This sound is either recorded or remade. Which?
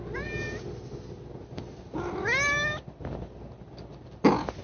recorded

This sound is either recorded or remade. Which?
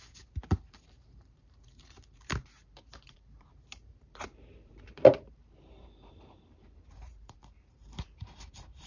remade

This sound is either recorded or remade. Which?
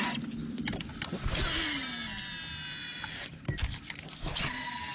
recorded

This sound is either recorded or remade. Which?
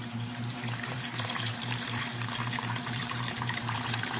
remade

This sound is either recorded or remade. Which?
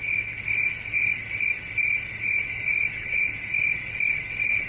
recorded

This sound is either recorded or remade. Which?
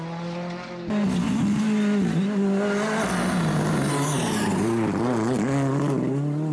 recorded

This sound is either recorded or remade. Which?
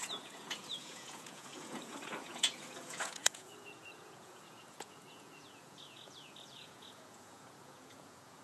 remade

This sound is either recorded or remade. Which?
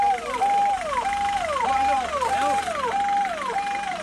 recorded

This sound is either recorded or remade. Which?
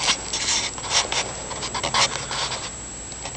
recorded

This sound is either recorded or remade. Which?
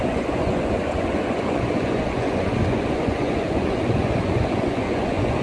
remade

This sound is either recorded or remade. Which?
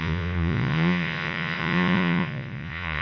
remade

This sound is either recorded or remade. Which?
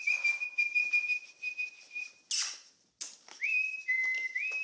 recorded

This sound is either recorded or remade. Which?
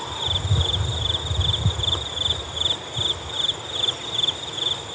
recorded